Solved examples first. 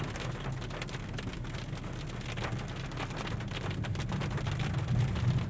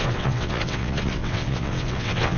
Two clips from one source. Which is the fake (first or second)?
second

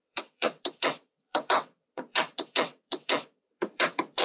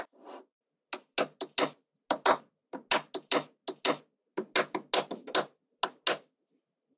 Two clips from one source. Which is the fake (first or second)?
first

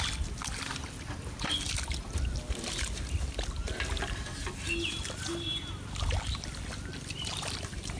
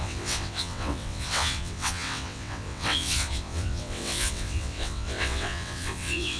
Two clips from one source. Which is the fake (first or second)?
second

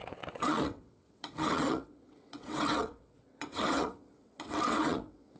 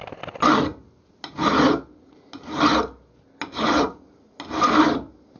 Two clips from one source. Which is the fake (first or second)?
first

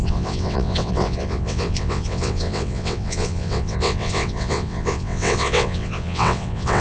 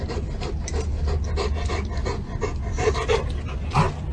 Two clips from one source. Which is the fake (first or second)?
first